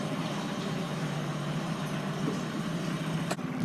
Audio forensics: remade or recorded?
recorded